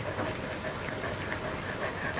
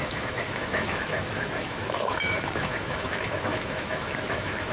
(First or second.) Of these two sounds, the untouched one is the first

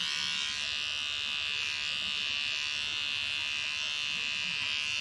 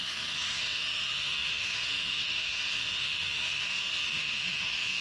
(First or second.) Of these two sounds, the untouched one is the first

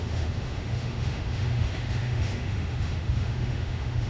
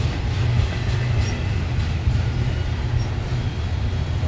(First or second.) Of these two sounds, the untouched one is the second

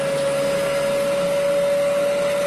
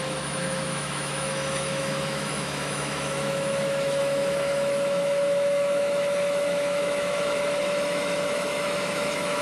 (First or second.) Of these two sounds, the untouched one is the first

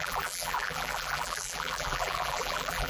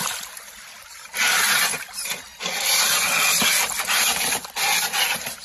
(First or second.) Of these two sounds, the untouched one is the second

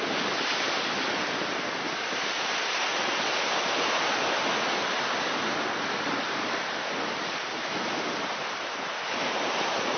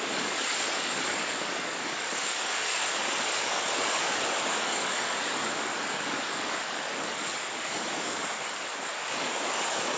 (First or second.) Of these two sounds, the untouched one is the first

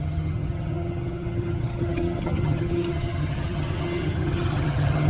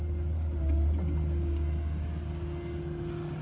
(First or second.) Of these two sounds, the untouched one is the second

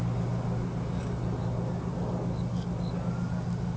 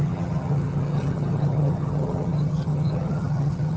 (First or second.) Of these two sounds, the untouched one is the first